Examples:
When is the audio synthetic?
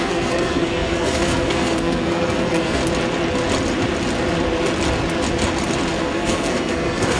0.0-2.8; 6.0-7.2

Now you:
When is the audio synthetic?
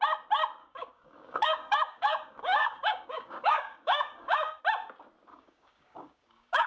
0.6-4.6; 5.3-6.7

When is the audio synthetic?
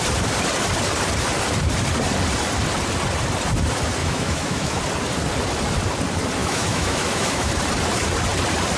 4.0-4.8; 6.4-7.5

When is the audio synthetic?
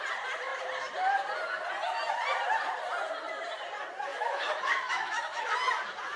4.1-5.5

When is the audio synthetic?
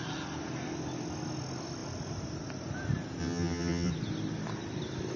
3.2-3.9